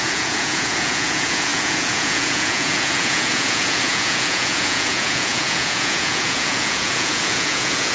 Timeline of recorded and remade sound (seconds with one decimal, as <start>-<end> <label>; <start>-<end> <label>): 0.0-7.9 remade